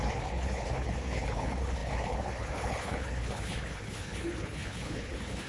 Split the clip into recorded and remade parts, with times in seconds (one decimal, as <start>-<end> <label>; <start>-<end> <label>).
0.0-5.5 remade